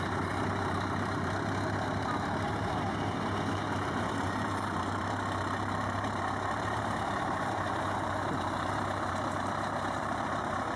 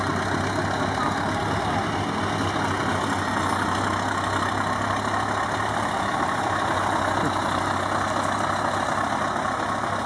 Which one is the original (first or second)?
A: second